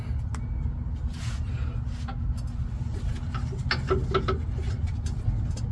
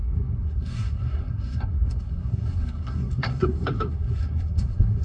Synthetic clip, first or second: second